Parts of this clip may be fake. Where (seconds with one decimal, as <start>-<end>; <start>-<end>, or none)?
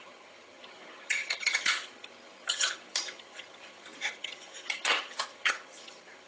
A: 0.0-6.3